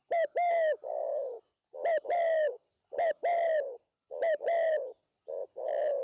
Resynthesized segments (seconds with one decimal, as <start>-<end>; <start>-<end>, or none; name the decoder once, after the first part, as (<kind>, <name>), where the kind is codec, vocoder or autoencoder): none